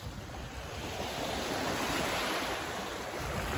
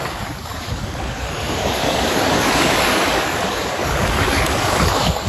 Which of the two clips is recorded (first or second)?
first